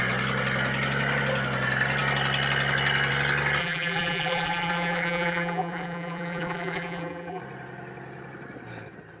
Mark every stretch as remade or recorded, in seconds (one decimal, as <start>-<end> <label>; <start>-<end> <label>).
0.0-3.6 recorded; 3.6-7.4 remade; 7.4-9.2 recorded